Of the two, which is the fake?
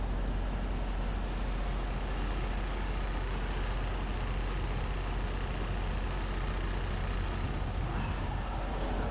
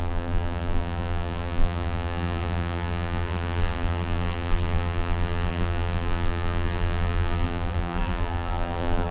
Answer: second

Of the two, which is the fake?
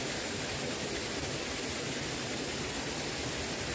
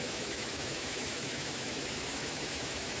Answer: second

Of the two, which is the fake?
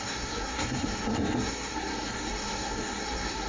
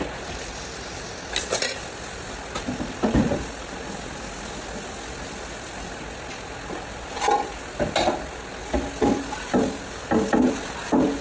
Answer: first